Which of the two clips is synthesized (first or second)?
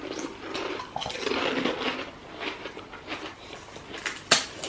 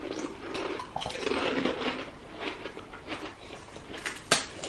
second